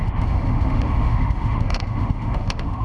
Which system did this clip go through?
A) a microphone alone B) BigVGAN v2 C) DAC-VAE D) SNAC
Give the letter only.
C